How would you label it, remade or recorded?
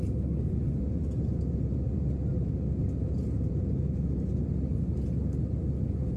recorded